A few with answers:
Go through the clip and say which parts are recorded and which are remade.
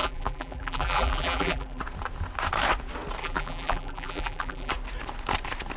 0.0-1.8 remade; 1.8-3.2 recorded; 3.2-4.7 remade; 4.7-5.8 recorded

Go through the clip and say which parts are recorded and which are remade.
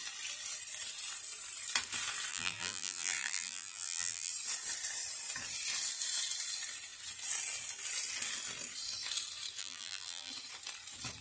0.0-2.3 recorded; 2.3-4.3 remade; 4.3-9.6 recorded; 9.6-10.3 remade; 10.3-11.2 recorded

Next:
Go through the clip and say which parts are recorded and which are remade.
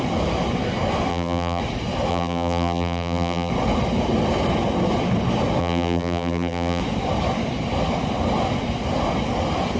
0.0-1.1 recorded; 1.1-1.6 remade; 1.6-2.1 recorded; 2.1-3.5 remade; 3.5-5.6 recorded; 5.6-6.8 remade; 6.8-9.8 recorded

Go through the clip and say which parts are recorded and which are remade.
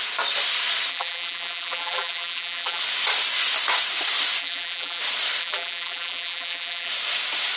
0.0-0.9 recorded; 0.9-2.8 remade; 2.8-4.4 recorded; 4.4-5.0 remade; 5.0-5.4 recorded; 5.4-6.9 remade; 6.9-7.6 recorded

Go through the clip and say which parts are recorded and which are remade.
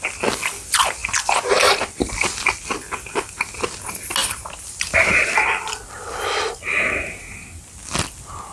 0.0-1.0 recorded; 1.0-2.1 remade; 2.1-4.2 recorded; 4.2-6.6 remade; 6.6-8.5 recorded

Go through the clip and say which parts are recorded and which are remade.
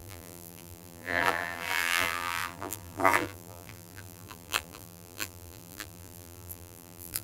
0.0-7.2 remade